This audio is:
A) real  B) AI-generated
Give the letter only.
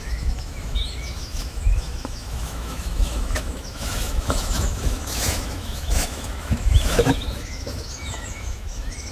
B